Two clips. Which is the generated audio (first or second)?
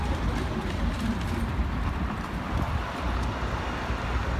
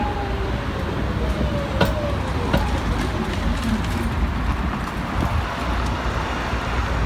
first